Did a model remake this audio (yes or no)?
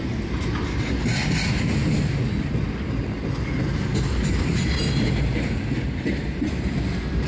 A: no